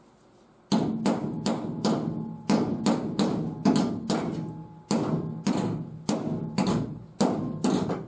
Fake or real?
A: real